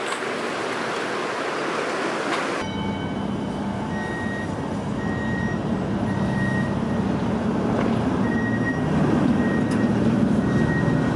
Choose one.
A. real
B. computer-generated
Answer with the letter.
A